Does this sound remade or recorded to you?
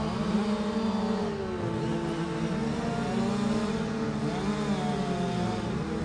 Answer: recorded